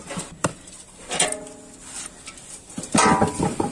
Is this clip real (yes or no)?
yes